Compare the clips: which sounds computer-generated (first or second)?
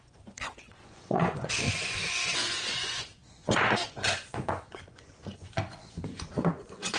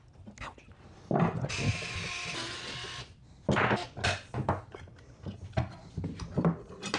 first